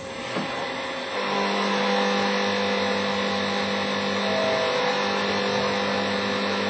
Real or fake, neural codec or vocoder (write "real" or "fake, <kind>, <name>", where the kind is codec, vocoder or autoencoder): real